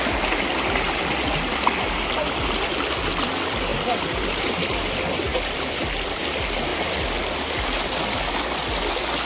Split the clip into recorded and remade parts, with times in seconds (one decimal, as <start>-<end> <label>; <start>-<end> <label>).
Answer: 0.0-3.7 recorded; 3.7-4.8 remade; 4.8-5.3 recorded; 5.3-6.2 remade; 6.2-6.7 recorded; 6.7-8.2 remade; 8.2-9.3 recorded